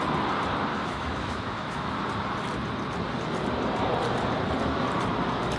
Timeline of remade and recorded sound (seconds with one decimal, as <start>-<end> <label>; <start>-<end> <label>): 0.0-0.7 recorded; 0.7-2.0 remade; 2.0-5.6 recorded